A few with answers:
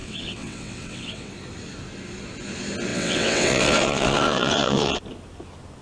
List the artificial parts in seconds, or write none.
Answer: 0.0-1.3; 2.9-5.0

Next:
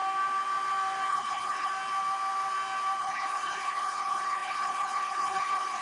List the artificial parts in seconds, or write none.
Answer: 1.1-1.7; 3.0-5.8

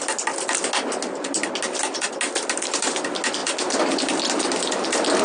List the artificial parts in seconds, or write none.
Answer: none

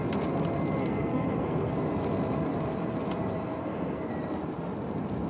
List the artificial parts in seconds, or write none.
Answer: 0.8-1.7; 3.6-4.1

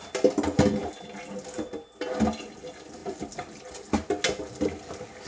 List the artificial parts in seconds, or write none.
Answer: none